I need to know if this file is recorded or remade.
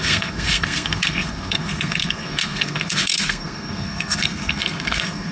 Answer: remade